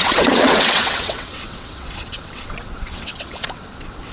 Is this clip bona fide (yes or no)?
no